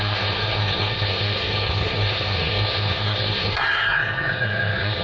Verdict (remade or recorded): remade